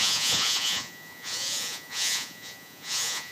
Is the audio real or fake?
fake